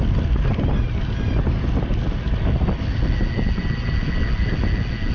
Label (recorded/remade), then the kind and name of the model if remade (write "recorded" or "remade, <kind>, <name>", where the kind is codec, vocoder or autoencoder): recorded